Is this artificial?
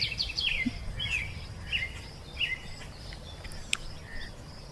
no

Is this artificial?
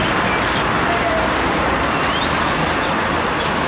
no